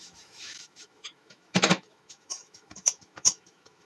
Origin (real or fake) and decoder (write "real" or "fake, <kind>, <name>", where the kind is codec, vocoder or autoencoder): fake, autoencoder, DAC-VAE